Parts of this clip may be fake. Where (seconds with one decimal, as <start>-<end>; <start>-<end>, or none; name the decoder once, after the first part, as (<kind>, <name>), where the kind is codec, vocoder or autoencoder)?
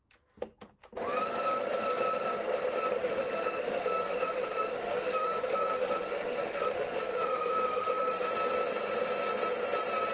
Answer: 3.0-8.3 (autoencoder, DAC-VAE)